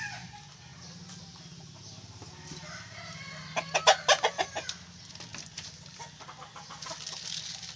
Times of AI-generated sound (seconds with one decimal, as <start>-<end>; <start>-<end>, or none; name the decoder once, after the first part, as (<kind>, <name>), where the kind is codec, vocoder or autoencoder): none